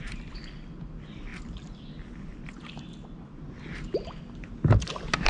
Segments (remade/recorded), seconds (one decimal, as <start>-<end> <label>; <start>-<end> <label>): 0.0-5.3 recorded